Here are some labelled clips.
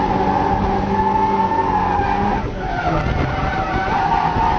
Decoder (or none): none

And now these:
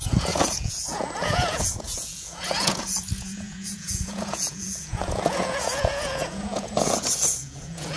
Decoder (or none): vocoder, Vocos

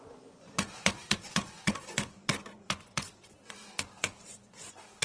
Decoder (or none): vocoder, Vocos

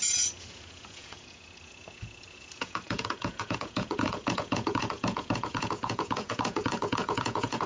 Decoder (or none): vocoder, Vocos